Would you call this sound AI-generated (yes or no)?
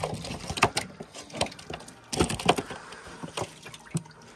no